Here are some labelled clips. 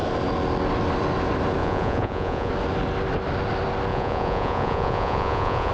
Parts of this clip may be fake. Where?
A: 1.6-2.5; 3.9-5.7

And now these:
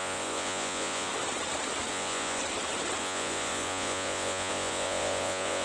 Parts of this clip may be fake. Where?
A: 0.0-1.1; 1.9-2.4; 3.0-5.6